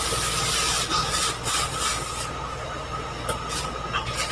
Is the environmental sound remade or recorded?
recorded